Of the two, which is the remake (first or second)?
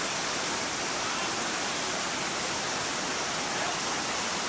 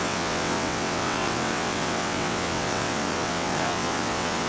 second